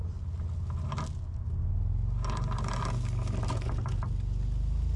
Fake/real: real